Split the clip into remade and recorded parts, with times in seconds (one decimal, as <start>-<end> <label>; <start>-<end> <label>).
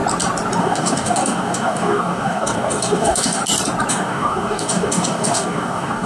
0.0-0.6 recorded; 0.6-3.4 remade; 3.4-3.9 recorded; 3.9-6.1 remade